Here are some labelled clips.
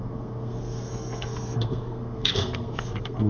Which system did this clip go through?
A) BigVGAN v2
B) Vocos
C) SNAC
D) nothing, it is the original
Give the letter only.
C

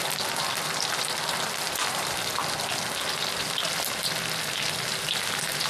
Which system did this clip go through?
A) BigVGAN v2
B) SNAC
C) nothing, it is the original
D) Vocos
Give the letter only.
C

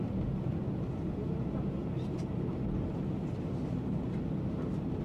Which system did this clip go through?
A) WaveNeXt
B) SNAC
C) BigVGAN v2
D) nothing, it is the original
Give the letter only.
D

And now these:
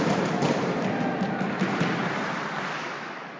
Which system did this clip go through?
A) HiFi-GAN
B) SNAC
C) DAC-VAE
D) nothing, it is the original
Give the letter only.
D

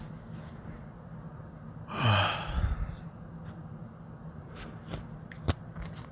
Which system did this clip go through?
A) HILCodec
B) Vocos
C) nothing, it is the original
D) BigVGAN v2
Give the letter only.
C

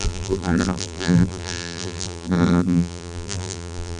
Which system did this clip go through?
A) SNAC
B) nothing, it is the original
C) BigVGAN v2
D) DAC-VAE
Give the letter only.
C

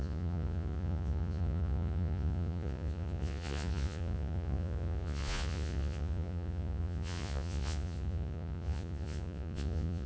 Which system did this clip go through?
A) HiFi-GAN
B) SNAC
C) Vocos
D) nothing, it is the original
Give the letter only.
C